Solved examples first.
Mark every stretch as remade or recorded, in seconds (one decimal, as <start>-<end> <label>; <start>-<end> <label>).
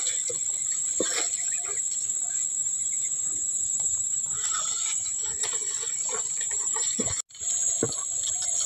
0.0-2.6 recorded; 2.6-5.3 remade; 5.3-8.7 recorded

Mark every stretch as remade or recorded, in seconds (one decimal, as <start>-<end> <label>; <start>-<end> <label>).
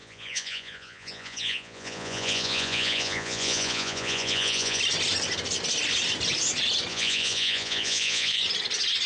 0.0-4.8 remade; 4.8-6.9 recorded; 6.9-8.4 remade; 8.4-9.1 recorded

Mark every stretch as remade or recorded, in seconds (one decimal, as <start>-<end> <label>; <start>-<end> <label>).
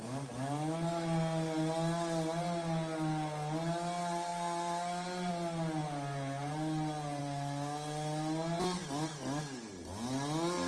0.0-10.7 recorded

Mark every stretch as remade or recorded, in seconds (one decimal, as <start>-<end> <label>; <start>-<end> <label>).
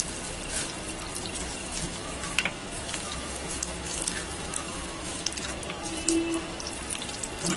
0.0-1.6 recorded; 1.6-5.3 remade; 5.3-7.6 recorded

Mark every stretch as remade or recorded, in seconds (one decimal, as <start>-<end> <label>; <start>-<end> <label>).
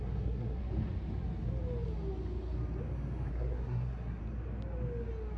0.0-0.6 remade; 0.6-3.3 recorded; 3.3-4.2 remade; 4.2-5.4 recorded